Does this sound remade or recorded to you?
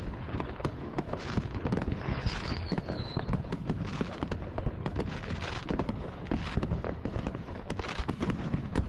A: remade